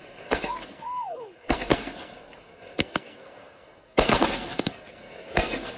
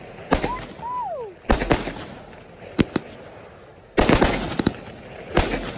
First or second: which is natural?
second